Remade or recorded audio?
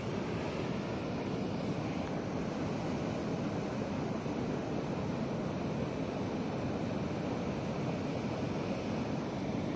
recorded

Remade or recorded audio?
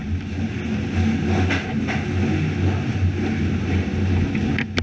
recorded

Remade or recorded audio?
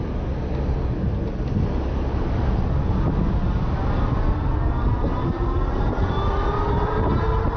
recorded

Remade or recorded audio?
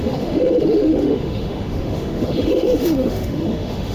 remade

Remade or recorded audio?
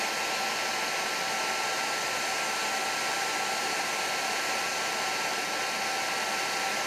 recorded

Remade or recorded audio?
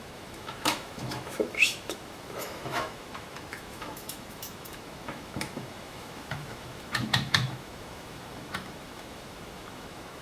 remade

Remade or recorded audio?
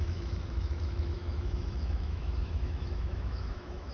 remade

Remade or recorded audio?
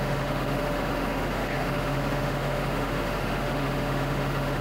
remade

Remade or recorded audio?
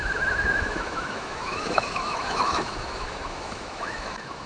remade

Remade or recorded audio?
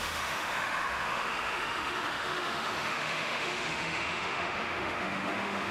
remade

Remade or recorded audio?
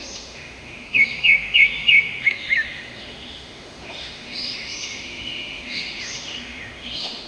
remade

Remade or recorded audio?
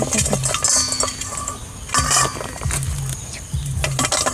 recorded